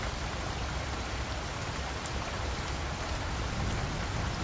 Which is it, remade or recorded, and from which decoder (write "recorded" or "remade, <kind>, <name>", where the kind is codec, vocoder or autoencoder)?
remade, vocoder, BigVGAN v2